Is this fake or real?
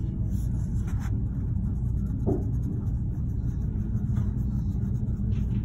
real